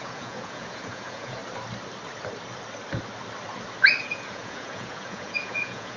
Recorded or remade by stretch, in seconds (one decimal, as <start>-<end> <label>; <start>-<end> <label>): 0.0-1.4 remade; 1.4-4.0 recorded; 4.0-6.0 remade